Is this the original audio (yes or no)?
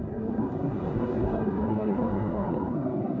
no